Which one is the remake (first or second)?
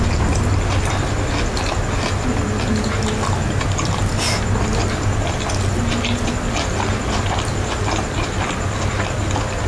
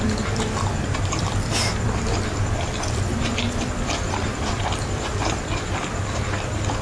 second